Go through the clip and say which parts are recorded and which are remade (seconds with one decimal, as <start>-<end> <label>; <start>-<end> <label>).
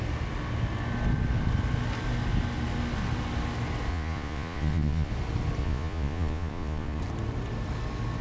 0.0-3.9 recorded; 3.9-5.1 remade; 5.1-5.6 recorded; 5.6-7.0 remade; 7.0-8.2 recorded